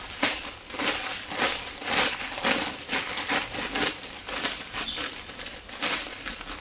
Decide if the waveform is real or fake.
real